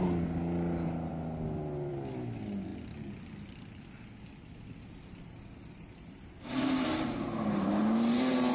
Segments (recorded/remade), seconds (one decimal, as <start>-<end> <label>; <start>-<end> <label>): 0.0-8.5 recorded